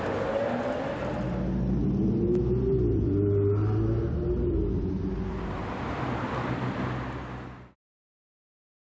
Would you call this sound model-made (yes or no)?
no